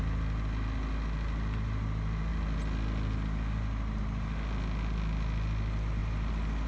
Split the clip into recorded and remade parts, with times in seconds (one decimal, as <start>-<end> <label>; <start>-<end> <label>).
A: 0.0-6.7 recorded